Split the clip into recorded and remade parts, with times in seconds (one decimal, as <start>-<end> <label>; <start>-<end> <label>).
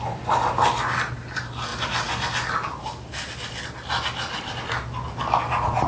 0.0-5.9 recorded